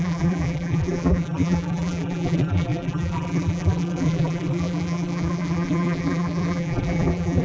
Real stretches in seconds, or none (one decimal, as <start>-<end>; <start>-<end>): none